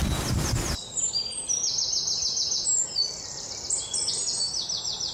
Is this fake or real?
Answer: real